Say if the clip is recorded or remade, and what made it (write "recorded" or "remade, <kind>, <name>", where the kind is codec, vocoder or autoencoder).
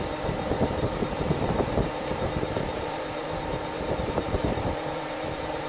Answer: remade, vocoder, BigVGAN v2